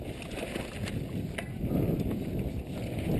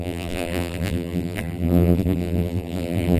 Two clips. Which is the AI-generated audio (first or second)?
second